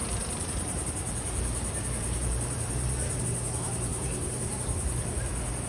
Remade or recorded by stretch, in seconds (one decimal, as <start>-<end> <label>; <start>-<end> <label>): 0.0-3.2 remade; 3.2-3.9 recorded; 3.9-4.6 remade; 4.6-5.7 recorded